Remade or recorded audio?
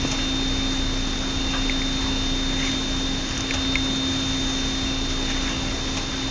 recorded